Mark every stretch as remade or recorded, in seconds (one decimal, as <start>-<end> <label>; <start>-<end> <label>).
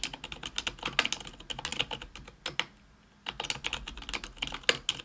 0.0-5.0 recorded